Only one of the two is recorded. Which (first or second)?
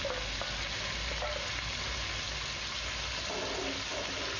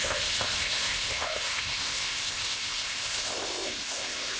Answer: first